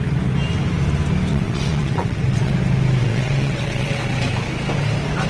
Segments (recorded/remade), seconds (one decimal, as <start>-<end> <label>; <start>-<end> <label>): 0.0-1.3 recorded; 1.3-2.5 remade; 2.5-3.0 recorded; 3.0-4.0 remade; 4.0-5.3 recorded